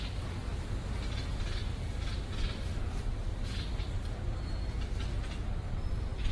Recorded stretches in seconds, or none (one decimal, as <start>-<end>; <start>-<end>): 0.0-6.3